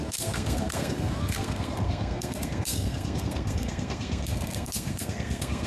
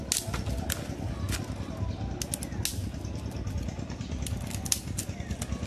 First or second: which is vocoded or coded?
first